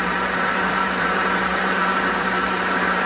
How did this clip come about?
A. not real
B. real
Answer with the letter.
A